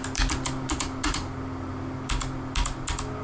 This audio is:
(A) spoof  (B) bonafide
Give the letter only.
B